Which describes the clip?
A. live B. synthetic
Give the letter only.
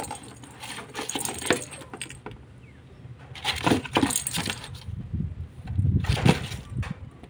A